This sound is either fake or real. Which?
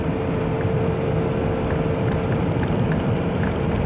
fake